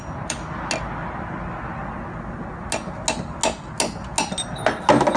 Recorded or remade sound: recorded